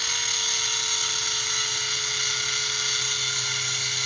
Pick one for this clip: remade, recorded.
recorded